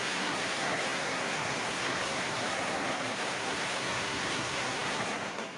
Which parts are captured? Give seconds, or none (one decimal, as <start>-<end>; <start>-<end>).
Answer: none